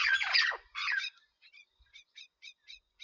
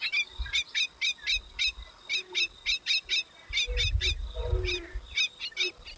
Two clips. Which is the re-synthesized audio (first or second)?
first